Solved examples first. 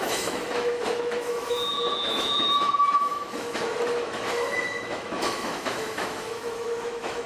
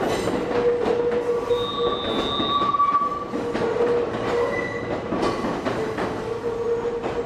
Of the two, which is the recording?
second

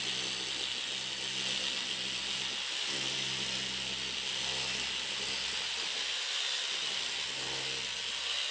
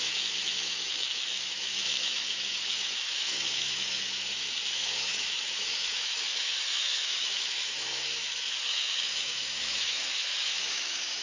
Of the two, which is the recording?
first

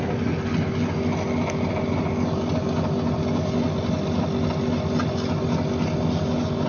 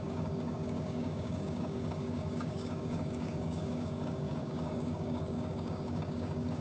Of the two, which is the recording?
first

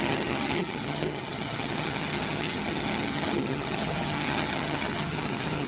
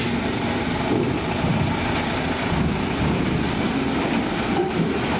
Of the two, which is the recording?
second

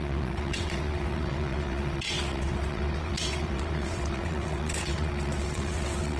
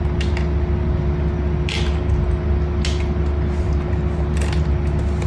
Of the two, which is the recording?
second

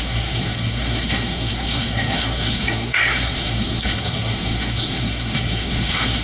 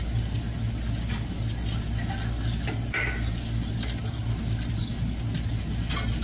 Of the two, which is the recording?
second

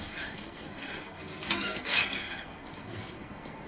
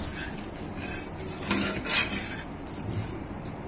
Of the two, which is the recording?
second